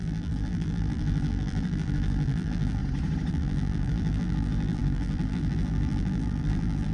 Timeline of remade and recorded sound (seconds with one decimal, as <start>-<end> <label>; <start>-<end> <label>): 0.0-2.8 remade; 2.8-3.3 recorded; 3.3-6.9 remade